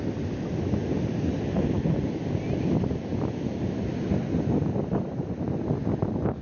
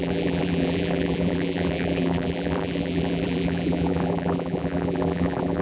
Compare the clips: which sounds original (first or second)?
first